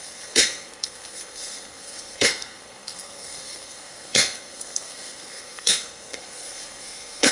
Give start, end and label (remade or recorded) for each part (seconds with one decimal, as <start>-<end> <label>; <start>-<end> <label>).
0.0-7.3 remade